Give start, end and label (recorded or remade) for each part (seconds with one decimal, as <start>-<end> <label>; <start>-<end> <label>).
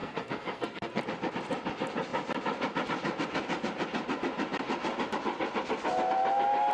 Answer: 0.0-1.0 remade; 1.0-6.7 recorded